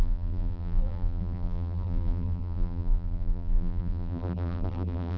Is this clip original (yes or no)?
no